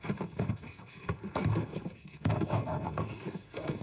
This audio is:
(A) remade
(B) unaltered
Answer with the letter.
A